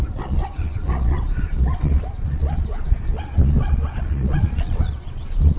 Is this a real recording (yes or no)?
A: no